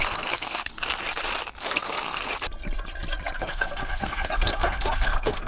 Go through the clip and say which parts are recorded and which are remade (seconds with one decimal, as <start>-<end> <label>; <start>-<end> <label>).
0.0-0.7 remade; 0.7-1.6 recorded; 1.6-2.2 remade; 2.2-3.4 recorded; 3.4-5.5 remade